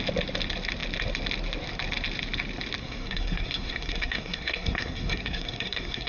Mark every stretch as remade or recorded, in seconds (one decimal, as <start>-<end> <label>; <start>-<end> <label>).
0.0-2.8 recorded; 2.8-6.1 remade